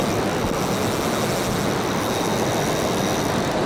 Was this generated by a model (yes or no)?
no